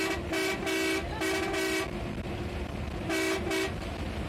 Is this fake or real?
real